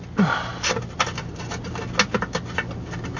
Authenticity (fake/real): real